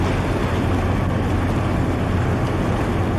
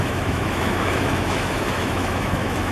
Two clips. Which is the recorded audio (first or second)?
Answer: first